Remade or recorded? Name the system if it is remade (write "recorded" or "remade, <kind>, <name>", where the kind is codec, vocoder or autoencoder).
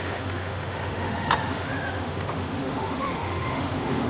remade, autoencoder, DAC-VAE